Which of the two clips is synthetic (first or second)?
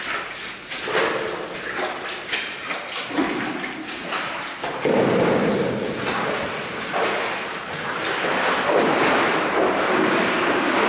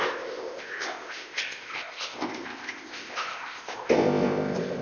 second